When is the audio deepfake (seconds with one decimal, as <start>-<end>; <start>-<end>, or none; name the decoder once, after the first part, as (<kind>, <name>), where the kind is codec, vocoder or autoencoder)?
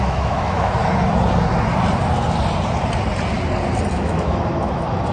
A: 0.0-0.8 (autoencoder, DAC-VAE); 3.9-5.1